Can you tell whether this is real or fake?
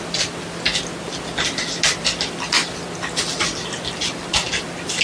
real